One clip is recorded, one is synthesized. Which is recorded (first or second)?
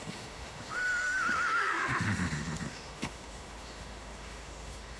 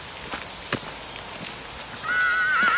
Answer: second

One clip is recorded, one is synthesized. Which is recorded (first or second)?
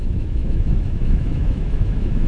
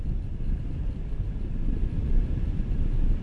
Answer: second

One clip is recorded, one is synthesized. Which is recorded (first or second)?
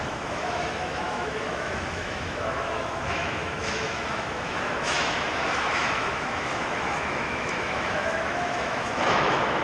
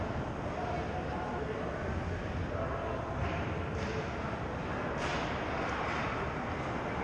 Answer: second